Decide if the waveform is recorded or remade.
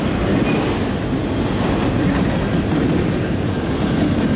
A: recorded